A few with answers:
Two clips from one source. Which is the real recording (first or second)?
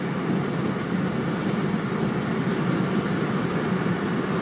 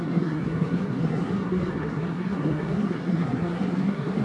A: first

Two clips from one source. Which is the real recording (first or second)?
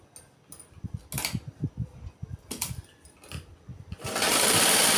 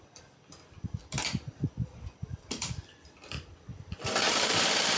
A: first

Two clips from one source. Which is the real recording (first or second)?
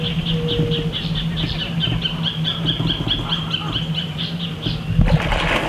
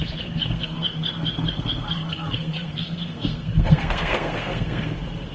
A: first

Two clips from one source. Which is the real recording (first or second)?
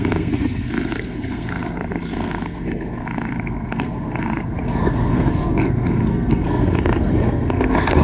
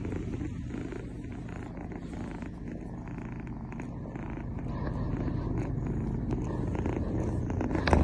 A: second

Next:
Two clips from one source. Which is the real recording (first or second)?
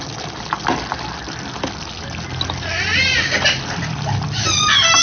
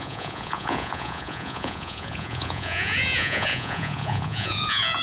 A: first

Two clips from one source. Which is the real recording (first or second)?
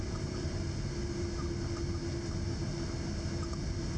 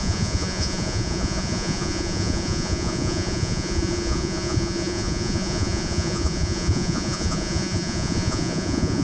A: first